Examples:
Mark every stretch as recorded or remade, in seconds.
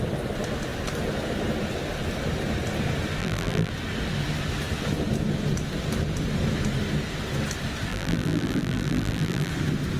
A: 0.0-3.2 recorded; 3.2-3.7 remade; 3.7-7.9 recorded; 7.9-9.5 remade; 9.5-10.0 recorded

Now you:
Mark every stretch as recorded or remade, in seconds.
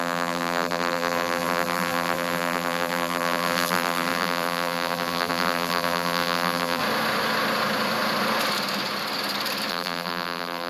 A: 0.0-6.8 remade; 6.8-9.7 recorded; 9.7-10.7 remade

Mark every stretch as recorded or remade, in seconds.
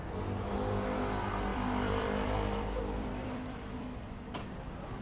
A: 0.0-1.5 recorded; 1.5-4.0 remade; 4.0-5.0 recorded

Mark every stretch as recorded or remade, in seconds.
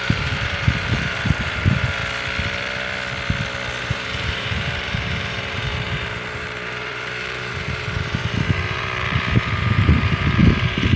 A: 0.0-2.0 remade; 2.0-3.8 recorded; 3.8-11.0 remade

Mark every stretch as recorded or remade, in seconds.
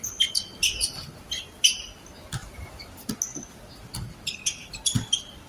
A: 0.0-2.4 recorded; 2.4-3.1 remade; 3.1-5.5 recorded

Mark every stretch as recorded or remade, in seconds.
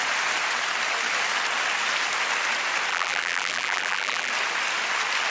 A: 0.0-2.9 recorded; 2.9-4.3 remade; 4.3-5.3 recorded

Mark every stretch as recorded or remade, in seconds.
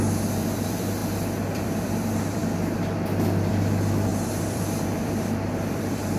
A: 0.0-1.0 remade; 1.0-1.6 recorded; 1.6-2.4 remade; 2.4-3.5 recorded; 3.5-6.2 remade